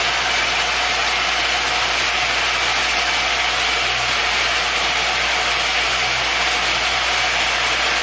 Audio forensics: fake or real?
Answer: real